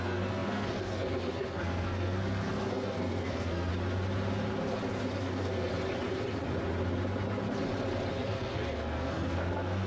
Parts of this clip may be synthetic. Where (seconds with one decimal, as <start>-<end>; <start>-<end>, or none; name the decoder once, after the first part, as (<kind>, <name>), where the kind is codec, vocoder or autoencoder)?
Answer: 0.0-3.7 (codec, SNAC); 5.2-5.7; 8.1-9.9